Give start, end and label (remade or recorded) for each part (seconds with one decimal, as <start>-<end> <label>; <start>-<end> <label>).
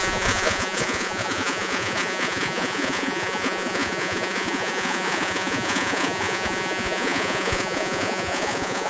0.0-8.9 remade